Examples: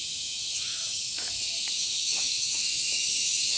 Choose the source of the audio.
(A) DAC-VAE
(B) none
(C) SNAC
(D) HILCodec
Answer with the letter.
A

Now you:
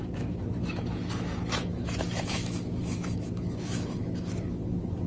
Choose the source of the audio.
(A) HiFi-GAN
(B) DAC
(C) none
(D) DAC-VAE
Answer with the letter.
D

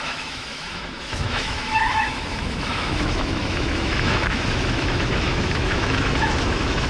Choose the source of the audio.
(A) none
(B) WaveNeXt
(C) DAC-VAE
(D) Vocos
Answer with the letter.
C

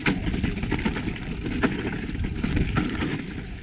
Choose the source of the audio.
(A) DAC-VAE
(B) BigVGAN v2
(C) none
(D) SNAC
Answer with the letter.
C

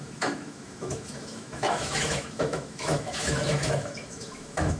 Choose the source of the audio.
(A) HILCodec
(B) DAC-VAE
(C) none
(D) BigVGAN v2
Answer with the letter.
B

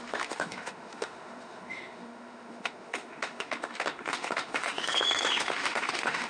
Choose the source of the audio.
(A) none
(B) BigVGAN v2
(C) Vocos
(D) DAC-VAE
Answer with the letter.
D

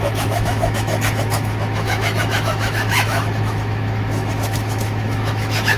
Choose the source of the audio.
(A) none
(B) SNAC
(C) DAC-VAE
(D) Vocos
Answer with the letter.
C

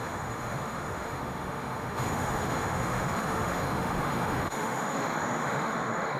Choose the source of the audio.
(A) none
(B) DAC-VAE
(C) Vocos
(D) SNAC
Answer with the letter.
B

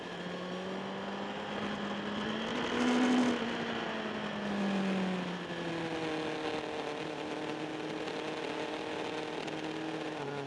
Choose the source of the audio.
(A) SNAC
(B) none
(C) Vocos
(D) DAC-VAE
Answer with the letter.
B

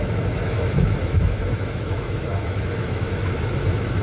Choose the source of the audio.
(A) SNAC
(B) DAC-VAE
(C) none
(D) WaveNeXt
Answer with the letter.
B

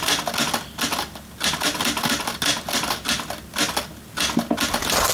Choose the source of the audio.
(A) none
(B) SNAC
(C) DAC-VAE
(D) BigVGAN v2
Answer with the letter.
A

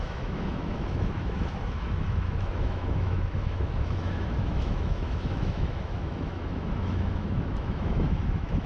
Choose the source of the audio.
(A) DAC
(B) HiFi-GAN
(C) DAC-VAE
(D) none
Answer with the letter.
C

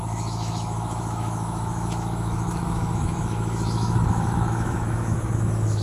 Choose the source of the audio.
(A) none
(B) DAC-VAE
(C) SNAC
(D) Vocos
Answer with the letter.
B